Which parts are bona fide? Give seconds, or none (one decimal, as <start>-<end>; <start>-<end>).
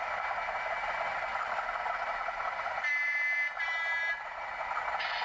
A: 0.0-1.3; 4.4-5.2